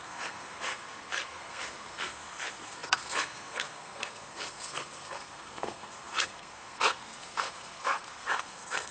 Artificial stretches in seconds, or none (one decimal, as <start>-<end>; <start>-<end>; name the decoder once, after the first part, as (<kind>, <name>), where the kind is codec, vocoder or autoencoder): 0.0-8.9 (codec, SNAC)